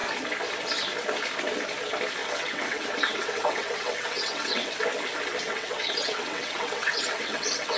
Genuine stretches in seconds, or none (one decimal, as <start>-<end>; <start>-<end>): 0.0-2.2; 4.7-5.4